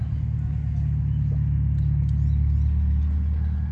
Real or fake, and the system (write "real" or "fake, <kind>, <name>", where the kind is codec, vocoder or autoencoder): real